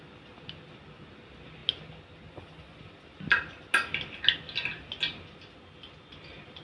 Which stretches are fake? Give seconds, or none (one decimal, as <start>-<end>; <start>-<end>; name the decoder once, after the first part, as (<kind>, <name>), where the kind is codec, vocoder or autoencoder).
none